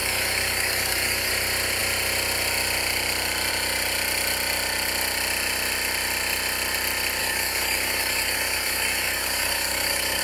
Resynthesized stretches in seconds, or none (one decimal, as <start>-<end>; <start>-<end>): 0.0-1.3; 7.2-10.2